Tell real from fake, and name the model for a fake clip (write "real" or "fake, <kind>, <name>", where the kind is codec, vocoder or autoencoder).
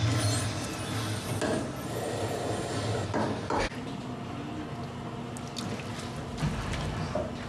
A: real